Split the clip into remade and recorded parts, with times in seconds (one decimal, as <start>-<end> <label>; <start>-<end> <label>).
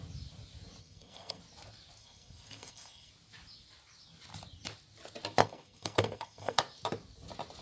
0.0-0.8 recorded; 0.8-1.4 remade; 1.4-2.0 recorded; 2.0-3.1 remade; 3.1-5.4 recorded; 5.4-6.6 remade; 6.6-7.6 recorded